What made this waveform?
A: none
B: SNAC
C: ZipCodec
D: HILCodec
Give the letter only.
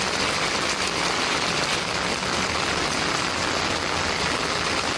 A